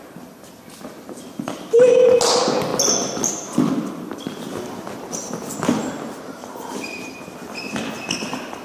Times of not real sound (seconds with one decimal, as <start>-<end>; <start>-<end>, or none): none